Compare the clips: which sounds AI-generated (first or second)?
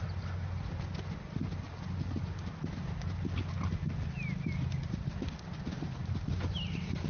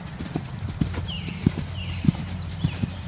second